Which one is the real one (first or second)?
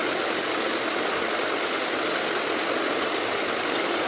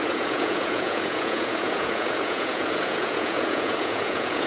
first